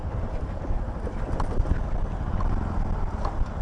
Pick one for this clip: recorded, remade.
recorded